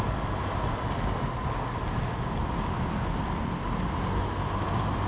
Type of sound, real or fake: real